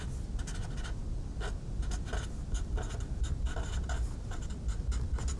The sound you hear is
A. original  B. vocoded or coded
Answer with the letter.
A